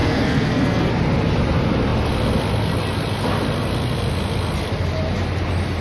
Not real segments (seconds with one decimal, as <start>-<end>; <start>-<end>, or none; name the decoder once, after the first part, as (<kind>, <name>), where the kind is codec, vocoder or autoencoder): 0.0-0.9 (codec, SNAC)